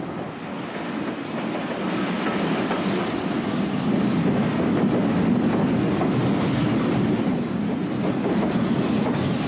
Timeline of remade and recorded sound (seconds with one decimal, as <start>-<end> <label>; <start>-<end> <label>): 0.0-9.5 recorded